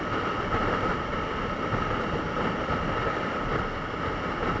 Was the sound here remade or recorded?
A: recorded